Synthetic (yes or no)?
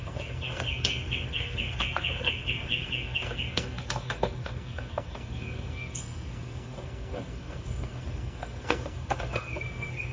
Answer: yes